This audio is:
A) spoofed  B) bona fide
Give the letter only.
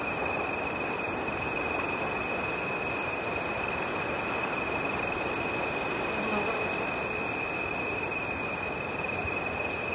B